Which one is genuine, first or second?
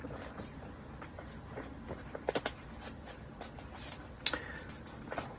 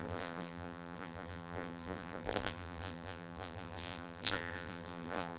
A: first